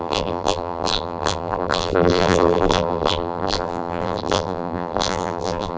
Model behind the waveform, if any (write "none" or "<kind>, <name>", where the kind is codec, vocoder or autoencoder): vocoder, BigVGAN v2